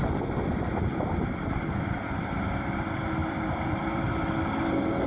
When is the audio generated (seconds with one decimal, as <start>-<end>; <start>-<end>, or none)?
3.2-5.1